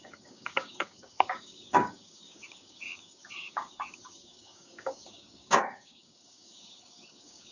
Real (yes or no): no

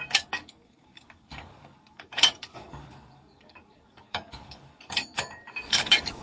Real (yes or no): no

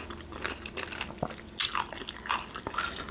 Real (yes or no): yes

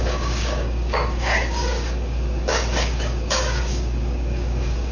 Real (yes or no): no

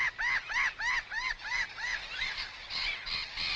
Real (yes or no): yes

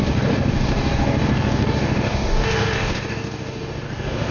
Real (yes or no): no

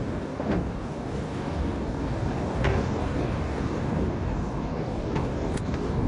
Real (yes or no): no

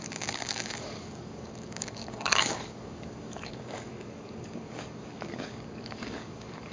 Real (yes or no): no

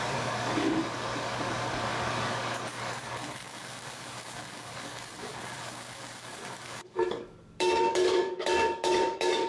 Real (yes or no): no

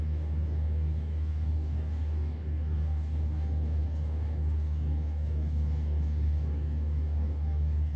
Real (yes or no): no